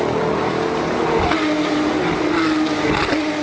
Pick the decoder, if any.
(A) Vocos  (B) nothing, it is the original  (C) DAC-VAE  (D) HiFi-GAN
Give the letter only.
B